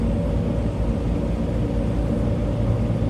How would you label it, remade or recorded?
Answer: recorded